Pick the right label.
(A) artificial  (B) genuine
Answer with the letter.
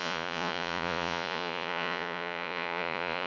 A